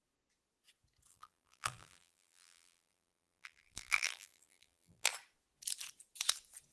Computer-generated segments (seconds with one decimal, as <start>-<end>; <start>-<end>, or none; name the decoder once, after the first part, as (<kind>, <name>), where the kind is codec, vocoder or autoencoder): 1.1-5.1 (vocoder, BigVGAN v2)